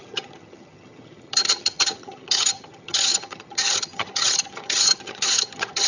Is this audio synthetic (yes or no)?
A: yes